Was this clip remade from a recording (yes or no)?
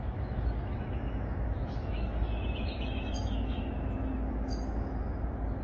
yes